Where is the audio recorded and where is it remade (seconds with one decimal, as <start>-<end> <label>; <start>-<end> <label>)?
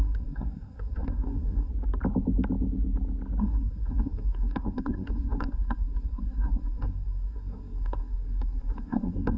0.0-1.7 remade; 1.7-3.4 recorded; 3.4-9.4 remade